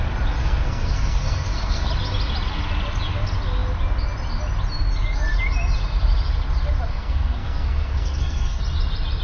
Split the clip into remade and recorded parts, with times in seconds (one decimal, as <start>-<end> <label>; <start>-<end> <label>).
0.0-0.4 recorded; 0.4-1.9 remade; 1.9-6.9 recorded; 6.9-8.6 remade; 8.6-9.2 recorded